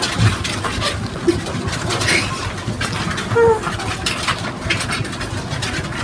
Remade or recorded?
recorded